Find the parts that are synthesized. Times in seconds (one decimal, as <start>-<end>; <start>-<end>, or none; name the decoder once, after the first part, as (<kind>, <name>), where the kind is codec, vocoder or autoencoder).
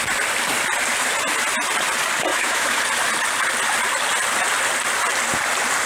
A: 2.3-2.8 (autoencoder, DAC-VAE)